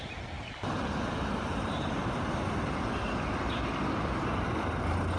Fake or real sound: real